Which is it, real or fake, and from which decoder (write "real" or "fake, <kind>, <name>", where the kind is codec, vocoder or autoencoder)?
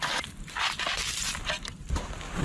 real